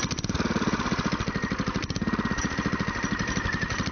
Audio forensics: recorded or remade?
recorded